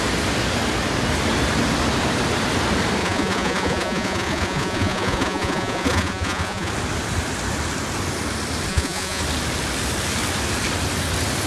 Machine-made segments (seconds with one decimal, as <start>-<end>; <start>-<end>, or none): 3.0-6.7; 8.7-9.2